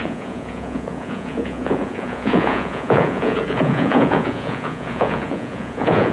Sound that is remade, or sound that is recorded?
remade